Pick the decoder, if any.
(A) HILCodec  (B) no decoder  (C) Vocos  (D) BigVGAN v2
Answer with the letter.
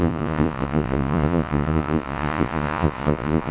C